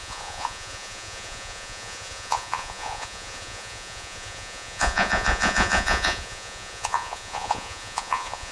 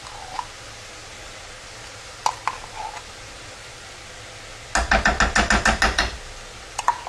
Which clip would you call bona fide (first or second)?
second